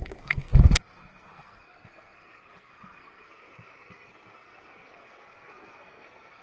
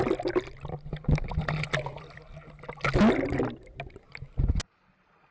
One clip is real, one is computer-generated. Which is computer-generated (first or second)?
first